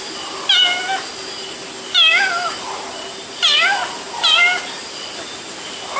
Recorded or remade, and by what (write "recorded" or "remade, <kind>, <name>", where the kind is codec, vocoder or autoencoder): recorded